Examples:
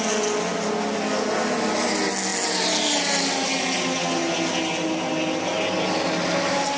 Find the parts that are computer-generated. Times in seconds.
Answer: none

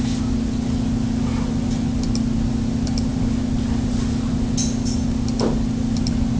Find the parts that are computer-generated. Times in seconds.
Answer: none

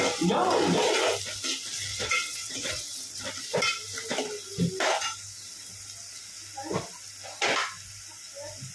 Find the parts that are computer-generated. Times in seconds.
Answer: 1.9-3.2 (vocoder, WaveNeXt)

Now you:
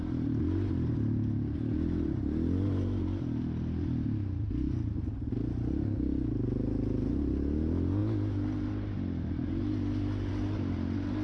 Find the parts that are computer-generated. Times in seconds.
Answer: none

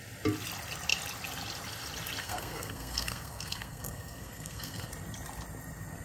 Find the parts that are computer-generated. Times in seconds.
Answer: 2.2-4.9 (codec, SNAC)

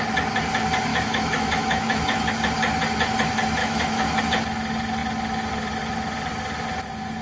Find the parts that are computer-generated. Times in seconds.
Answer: 0.9-2.3 (autoencoder, DAC-VAE); 3.6-4.2

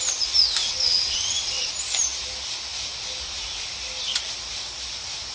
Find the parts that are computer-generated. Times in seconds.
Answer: 0.6-1.7 (vocoder, WaveNeXt)

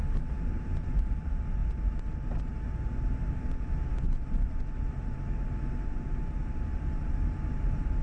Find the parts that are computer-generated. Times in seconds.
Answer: 0.0-1.6 (vocoder, BigVGAN v2); 6.4-8.0